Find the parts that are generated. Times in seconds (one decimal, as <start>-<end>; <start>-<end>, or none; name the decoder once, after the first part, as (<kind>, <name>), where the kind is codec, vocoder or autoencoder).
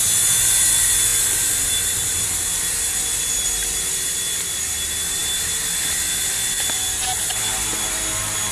0.0-8.5 (vocoder, BigVGAN v2)